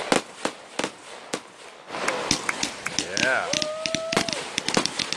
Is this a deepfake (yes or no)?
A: no